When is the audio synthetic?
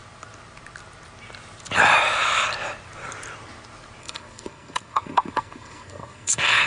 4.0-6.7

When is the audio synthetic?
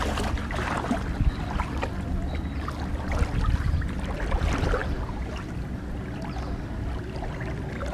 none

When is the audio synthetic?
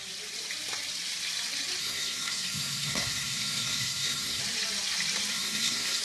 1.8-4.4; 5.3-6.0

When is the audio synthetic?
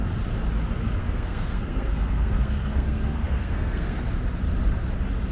1.0-4.0